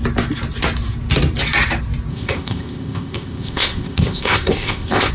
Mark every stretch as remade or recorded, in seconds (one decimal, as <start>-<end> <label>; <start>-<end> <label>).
0.0-2.1 recorded; 2.1-5.1 remade